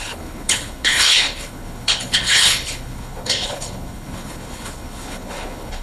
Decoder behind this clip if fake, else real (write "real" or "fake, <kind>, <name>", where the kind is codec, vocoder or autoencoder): fake, codec, HILCodec